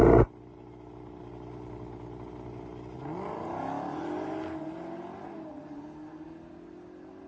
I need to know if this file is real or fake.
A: real